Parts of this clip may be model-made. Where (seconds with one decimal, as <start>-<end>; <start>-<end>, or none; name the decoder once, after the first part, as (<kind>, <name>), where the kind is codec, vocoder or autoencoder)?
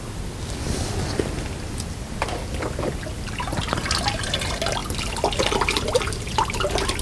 none